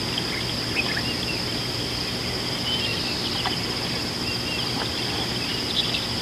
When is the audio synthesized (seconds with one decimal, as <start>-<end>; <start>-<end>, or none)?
none